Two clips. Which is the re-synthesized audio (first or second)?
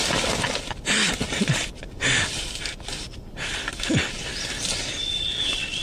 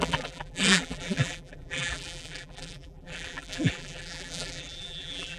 second